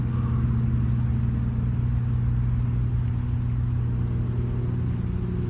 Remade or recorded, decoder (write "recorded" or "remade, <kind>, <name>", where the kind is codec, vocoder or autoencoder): recorded